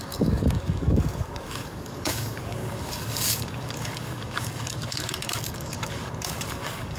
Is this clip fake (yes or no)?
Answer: yes